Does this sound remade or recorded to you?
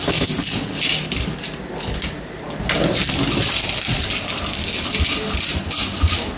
recorded